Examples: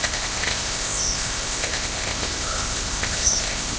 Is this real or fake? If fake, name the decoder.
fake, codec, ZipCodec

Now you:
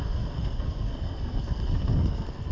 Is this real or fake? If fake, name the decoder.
fake, codec, SNAC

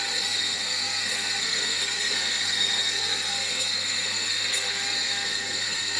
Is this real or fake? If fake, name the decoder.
fake, codec, SNAC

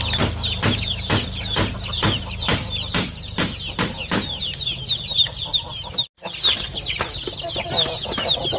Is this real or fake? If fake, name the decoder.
real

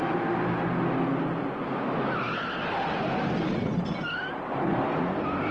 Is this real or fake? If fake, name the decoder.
real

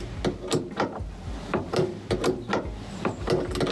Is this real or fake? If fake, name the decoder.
real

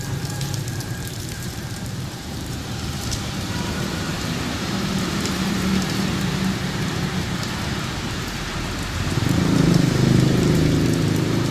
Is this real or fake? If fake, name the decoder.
fake, vocoder, BigVGAN v2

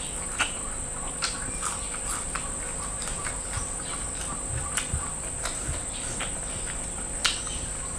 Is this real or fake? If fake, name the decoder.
real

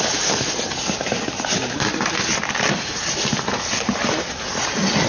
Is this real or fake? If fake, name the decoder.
real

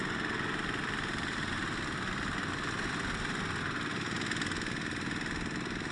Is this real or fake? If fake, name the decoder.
real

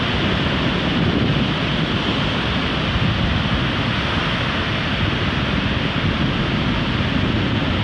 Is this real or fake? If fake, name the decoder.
real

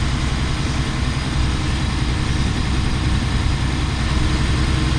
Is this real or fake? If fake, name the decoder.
real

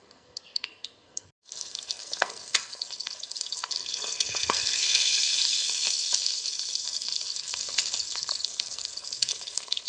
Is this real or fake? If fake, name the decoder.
fake, codec, SNAC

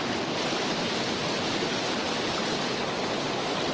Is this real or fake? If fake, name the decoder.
real